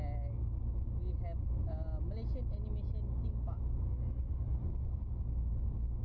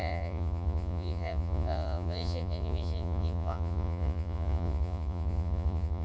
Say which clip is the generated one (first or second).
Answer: second